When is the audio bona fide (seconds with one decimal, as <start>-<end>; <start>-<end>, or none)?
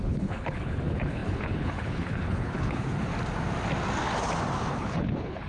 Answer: 3.1-4.7